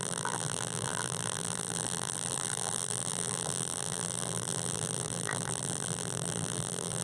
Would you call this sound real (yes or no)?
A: no